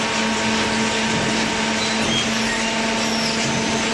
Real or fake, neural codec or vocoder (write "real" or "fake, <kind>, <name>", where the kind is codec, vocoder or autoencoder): real